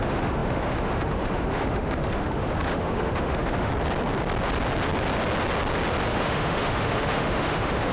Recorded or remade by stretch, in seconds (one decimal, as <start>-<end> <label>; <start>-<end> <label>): 0.0-3.7 remade; 3.7-6.1 recorded; 6.1-7.9 remade